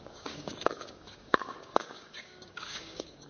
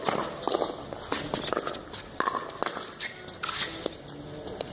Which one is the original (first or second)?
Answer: second